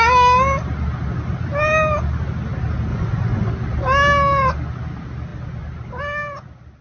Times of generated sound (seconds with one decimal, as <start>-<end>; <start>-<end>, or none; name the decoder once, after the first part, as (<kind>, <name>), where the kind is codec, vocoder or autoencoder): 2.9-3.5 (vocoder, Vocos)